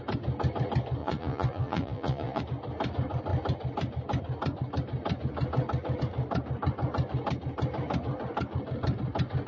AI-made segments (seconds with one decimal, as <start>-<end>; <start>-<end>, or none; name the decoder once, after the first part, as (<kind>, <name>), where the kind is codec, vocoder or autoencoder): 1.0-2.4 (vocoder, Vocos)